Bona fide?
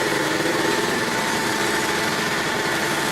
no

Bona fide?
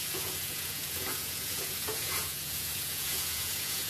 no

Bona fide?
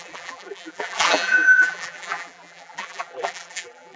no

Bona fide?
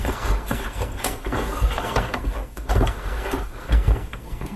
no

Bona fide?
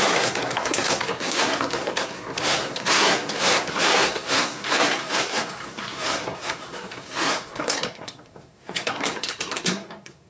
no